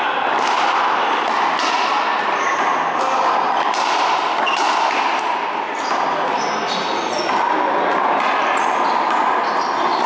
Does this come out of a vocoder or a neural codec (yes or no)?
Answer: no